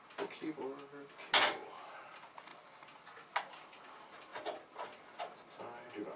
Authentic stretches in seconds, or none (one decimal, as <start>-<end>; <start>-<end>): 0.0-6.2